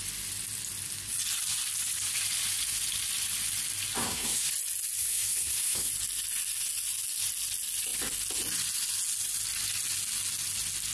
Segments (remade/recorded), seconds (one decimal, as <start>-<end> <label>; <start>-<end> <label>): 0.0-4.0 recorded; 4.0-4.5 remade; 4.5-5.0 recorded; 5.0-5.9 remade; 5.9-10.9 recorded